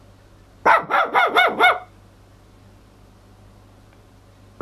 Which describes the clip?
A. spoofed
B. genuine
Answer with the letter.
B